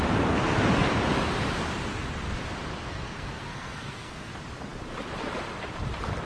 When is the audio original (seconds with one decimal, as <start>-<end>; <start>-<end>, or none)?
0.0-2.9; 4.3-6.3